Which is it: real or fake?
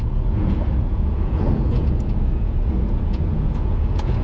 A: fake